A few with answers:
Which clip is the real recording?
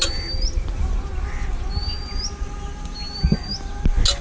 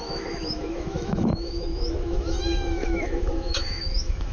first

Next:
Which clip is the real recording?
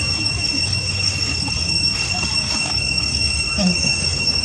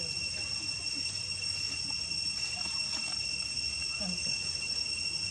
second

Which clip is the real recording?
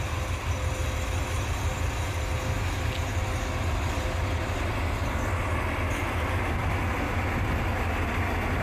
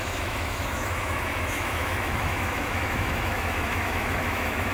first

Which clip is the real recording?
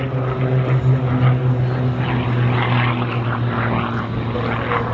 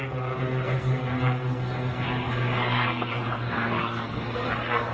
first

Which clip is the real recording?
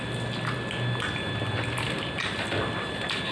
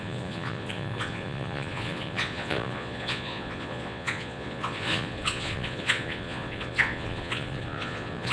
first